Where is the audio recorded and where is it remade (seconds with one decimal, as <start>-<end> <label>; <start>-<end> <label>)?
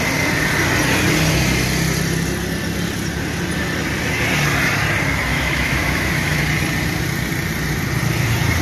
0.0-5.3 recorded; 5.3-6.4 remade; 6.4-8.6 recorded